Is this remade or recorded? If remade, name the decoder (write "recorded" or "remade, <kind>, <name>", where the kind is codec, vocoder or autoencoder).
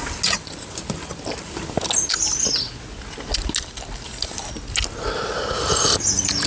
recorded